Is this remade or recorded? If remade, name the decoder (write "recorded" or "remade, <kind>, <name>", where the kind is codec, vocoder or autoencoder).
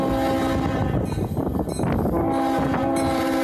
recorded